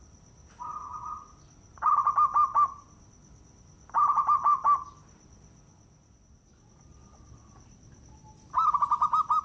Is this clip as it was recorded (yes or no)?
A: yes